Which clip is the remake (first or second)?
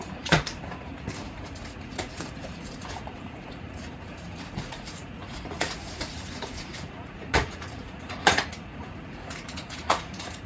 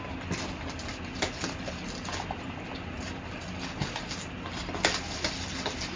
first